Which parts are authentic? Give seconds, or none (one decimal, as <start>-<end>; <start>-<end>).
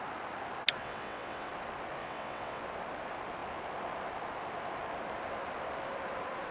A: 0.0-0.8; 1.5-2.0; 2.6-6.5